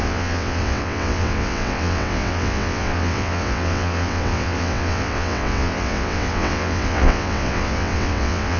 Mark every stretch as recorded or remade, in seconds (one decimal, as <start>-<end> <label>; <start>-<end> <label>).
0.0-8.6 remade